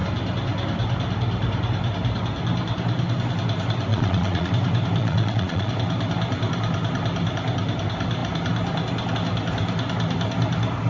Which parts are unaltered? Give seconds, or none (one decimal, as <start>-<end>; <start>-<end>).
0.0-3.9; 4.5-5.0; 5.7-10.9